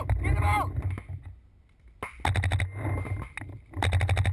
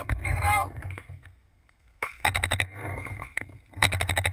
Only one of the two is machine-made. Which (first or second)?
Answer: second